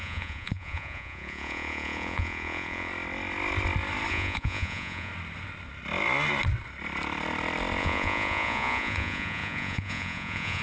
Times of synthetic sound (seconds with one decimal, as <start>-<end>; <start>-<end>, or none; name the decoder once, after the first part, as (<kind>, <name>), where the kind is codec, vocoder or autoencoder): 0.0-2.9 (vocoder, Vocos); 4.1-5.1; 7.8-10.6